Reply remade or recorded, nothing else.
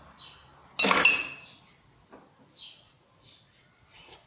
recorded